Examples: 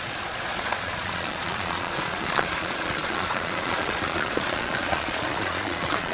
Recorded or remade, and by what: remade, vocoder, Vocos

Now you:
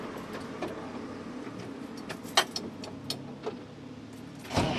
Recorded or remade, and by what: recorded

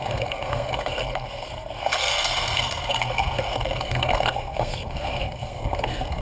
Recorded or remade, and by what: remade, codec, SNAC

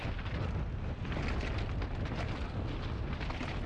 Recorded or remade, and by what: recorded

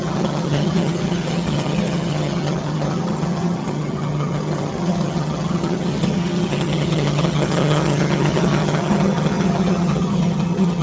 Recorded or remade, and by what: remade, vocoder, HiFi-GAN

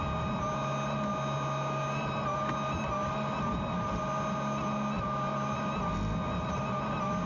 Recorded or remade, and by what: recorded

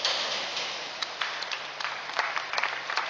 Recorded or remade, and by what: remade, vocoder, BigVGAN v2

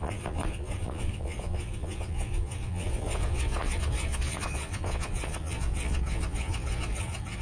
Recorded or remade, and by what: remade, vocoder, Vocos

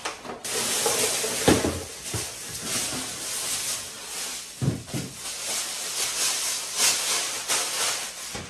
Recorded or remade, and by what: recorded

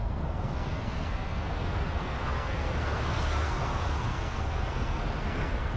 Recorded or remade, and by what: remade, codec, SNAC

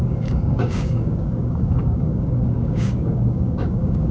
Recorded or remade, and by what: remade, codec, DAC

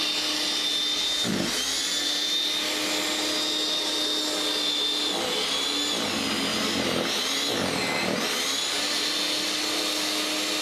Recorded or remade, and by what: recorded